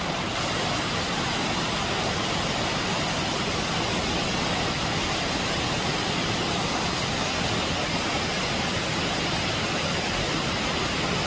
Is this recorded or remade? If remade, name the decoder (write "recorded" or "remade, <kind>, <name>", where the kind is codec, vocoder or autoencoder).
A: recorded